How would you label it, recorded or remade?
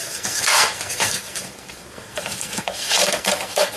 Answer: remade